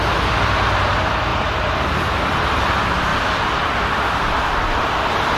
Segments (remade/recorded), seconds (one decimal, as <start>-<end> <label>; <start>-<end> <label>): 0.0-1.3 recorded; 1.3-2.6 remade; 2.6-5.4 recorded